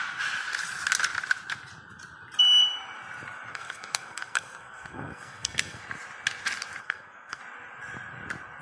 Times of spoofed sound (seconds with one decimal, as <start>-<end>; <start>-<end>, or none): 3.5-5.8; 6.8-7.4